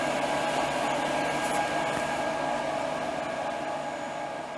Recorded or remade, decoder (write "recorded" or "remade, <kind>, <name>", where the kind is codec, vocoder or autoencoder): recorded